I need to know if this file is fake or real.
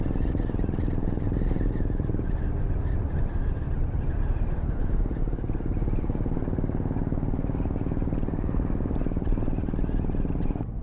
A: real